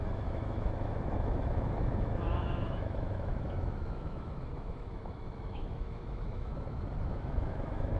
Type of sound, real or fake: fake